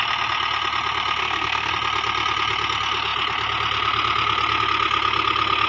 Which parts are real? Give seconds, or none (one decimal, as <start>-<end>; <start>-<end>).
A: 0.0-1.2; 1.7-5.7

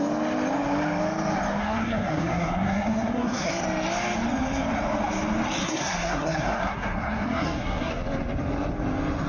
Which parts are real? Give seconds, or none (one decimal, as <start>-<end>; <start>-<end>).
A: 0.0-1.6; 3.5-5.6; 7.9-9.3

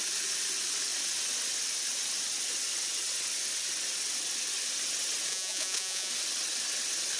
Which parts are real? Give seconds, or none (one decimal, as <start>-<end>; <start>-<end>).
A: 0.0-5.3; 6.1-7.2

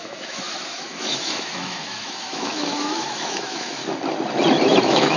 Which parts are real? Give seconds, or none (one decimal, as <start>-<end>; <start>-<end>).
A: 3.8-4.8

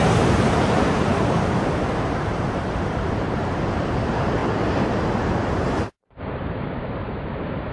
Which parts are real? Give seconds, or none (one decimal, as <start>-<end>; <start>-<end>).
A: 4.4-5.6